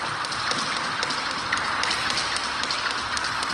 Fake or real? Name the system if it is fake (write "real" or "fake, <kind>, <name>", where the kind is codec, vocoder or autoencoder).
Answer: real